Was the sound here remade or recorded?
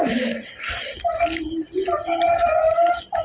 recorded